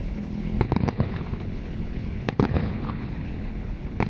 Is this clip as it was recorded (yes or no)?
no